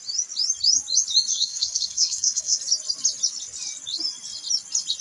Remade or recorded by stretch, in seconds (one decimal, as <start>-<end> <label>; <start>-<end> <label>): 0.0-1.3 recorded; 1.3-2.6 remade; 2.6-5.0 recorded